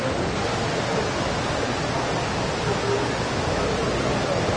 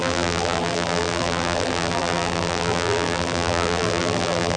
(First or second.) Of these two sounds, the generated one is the second